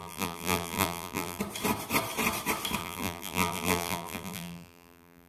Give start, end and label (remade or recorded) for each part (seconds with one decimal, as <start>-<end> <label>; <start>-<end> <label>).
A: 0.0-1.4 remade; 1.4-2.8 recorded; 2.8-5.3 remade